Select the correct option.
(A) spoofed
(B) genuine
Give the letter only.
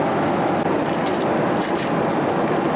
B